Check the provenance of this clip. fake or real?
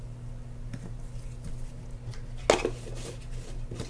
real